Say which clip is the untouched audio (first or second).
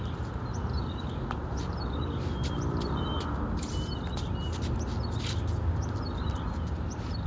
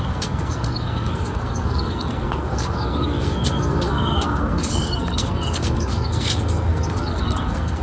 first